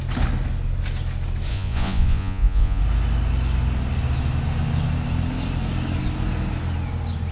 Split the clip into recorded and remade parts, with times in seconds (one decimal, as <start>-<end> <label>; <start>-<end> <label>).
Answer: 0.0-1.5 recorded; 1.5-2.8 remade; 2.8-7.3 recorded